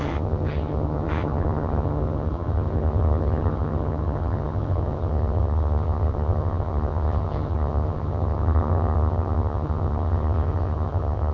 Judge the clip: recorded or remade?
remade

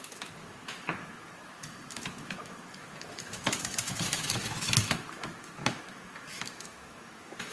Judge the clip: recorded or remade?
remade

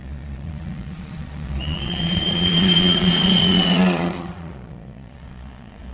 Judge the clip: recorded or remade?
remade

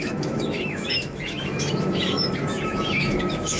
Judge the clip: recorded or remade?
remade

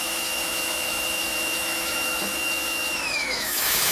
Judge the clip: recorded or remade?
remade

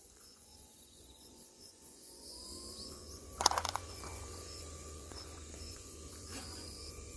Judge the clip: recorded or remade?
remade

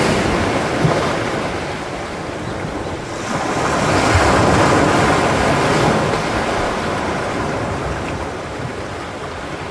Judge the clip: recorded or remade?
recorded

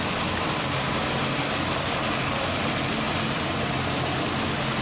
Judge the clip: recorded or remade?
recorded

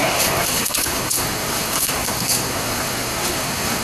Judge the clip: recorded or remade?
remade